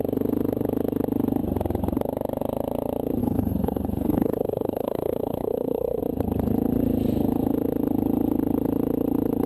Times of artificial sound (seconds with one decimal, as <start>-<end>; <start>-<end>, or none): 3.2-6.0

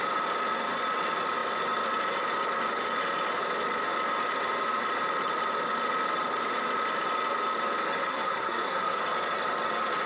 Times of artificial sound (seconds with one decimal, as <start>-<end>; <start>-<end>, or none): 8.1-9.0

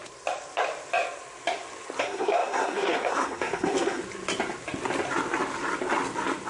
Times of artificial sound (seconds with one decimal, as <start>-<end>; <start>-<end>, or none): 2.0-4.0

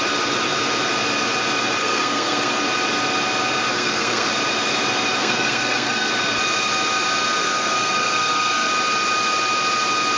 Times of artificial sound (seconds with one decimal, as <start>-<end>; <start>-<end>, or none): 1.8-2.6; 3.7-4.3; 5.2-6.1; 7.4-8.7